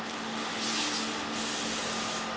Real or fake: real